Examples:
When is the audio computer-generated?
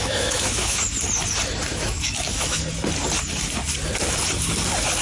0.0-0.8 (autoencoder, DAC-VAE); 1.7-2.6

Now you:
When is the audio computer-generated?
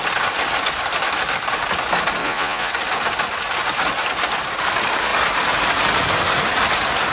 2.2-2.7 (vocoder, Vocos)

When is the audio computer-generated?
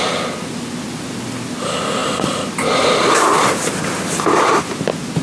2.0-5.2 (vocoder, BigVGAN v2)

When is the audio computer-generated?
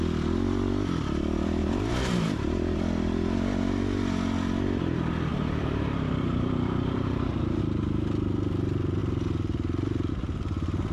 1.6-2.8 (vocoder, BigVGAN v2); 5.3-7.6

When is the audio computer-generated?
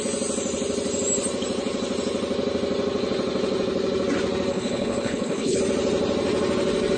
4.5-5.6 (codec, HILCodec)